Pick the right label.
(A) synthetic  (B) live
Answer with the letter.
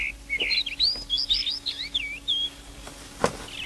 B